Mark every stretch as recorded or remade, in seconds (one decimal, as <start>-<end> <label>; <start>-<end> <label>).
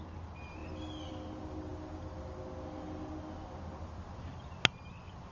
0.0-5.3 recorded